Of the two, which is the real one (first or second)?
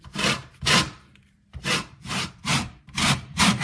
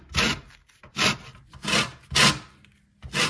second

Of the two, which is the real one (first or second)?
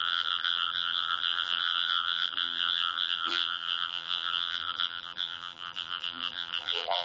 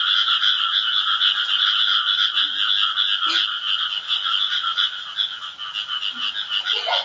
second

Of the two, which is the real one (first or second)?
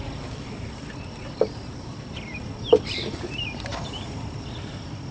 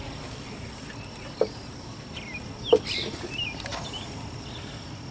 second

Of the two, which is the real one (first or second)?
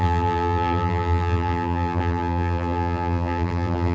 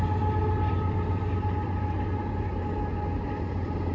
second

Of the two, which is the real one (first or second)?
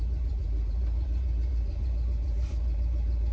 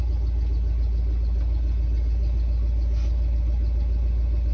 second